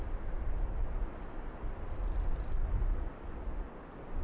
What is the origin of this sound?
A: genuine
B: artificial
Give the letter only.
A